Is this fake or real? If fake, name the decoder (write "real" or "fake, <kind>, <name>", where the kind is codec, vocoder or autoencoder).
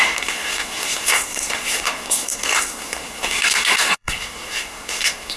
fake, codec, SNAC